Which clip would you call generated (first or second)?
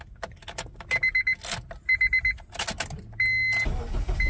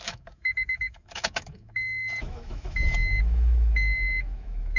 second